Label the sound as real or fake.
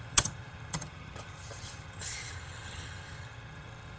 fake